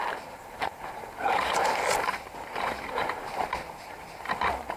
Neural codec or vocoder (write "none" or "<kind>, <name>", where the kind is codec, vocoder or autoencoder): vocoder, BigVGAN v2